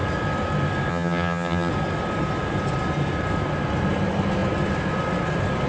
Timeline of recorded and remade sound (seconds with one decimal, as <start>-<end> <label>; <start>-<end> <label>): 0.0-0.9 recorded; 0.9-1.7 remade; 1.7-5.7 recorded